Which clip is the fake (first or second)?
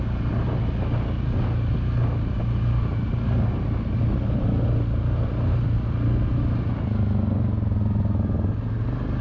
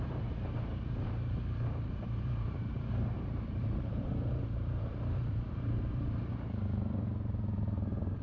second